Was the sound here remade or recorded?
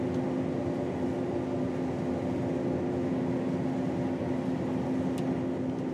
recorded